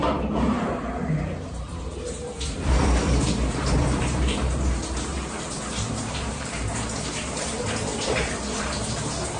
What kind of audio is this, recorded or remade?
remade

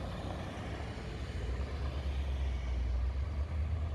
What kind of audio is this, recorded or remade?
recorded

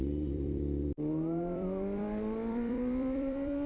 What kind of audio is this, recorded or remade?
remade